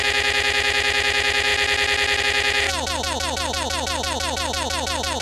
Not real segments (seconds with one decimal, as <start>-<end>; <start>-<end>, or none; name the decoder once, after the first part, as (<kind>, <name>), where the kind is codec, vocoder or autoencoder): none